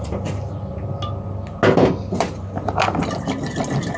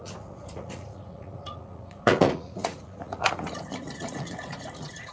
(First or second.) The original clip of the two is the first